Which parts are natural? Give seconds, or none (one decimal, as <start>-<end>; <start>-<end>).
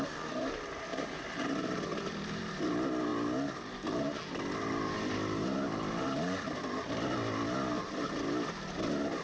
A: 0.0-9.2